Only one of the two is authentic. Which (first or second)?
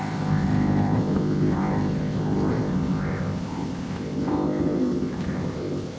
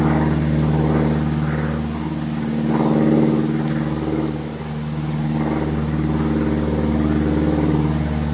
second